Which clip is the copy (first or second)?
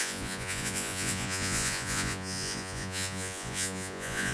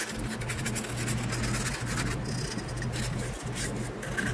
first